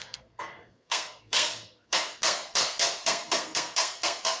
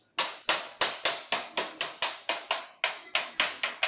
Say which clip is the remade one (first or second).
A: first